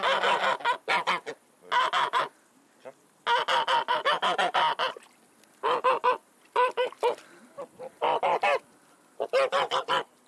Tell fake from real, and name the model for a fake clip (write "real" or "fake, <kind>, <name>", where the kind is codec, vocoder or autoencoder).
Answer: real